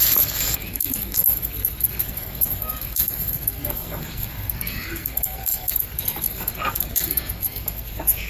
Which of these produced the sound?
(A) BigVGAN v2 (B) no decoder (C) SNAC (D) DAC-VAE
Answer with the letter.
C